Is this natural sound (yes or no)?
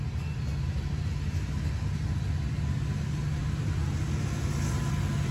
yes